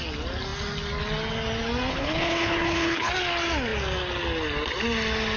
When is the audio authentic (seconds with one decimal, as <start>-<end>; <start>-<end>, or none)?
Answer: 0.0-1.9; 3.1-5.4

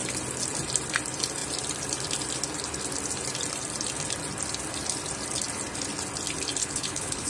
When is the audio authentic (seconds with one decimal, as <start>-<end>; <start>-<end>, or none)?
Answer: 0.0-6.6